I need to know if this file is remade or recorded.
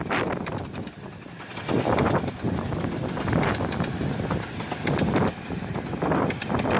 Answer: recorded